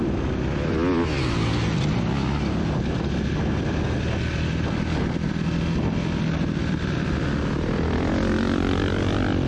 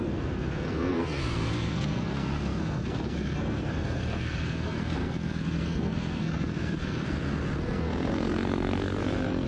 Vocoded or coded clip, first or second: second